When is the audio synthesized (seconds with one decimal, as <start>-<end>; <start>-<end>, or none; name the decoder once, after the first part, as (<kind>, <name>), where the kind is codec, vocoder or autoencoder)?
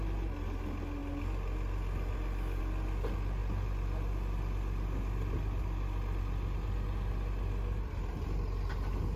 none